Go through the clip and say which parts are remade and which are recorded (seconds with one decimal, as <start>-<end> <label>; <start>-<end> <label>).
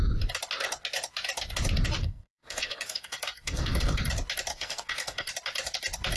0.0-2.0 recorded; 2.0-4.0 remade; 4.0-4.5 recorded; 4.5-5.3 remade; 5.3-6.2 recorded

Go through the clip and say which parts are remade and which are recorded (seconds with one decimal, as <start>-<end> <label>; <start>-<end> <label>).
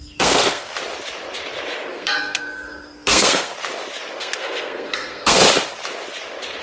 0.0-0.7 remade; 0.7-1.9 recorded; 1.9-3.5 remade; 3.5-4.2 recorded; 4.2-5.4 remade; 5.4-6.6 recorded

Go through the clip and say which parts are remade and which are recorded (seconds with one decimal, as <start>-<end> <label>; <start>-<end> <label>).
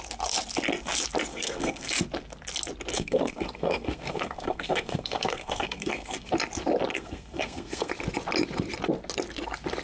0.0-1.3 recorded; 1.3-1.9 remade; 1.9-2.9 recorded; 2.9-6.3 remade; 6.3-6.9 recorded; 6.9-7.9 remade; 7.9-9.8 recorded